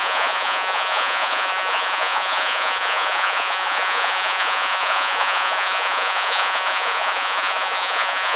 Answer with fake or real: fake